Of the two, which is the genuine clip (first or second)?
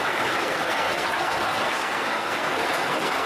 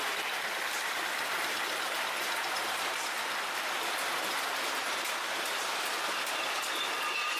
second